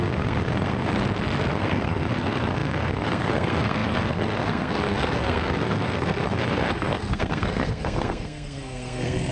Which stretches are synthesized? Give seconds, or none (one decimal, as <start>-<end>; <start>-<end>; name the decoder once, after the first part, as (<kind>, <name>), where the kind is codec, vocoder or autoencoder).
0.0-0.9 (codec, SNAC); 1.5-9.3